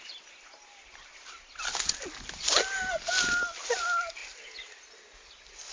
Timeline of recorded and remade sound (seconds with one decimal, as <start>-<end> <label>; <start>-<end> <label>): 0.0-1.7 remade; 1.7-2.9 recorded; 2.9-4.2 remade; 4.2-5.3 recorded; 5.3-5.7 remade